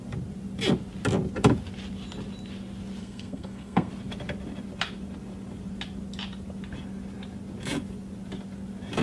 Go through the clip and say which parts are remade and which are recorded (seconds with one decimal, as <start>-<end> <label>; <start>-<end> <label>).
0.0-3.0 recorded; 3.0-3.9 remade; 3.9-9.0 recorded